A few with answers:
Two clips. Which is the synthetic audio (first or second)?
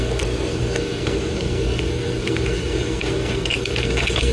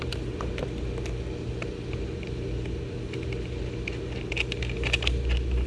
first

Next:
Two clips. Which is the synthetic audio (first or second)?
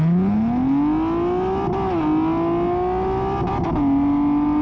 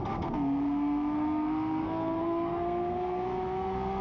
second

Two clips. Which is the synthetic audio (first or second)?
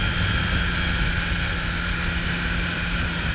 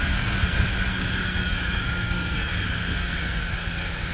second